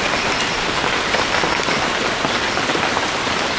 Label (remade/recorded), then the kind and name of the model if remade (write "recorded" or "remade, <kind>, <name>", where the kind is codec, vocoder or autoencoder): recorded